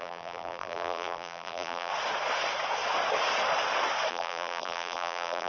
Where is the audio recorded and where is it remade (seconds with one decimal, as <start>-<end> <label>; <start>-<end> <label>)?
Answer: 0.0-1.9 remade; 1.9-4.1 recorded; 4.1-5.5 remade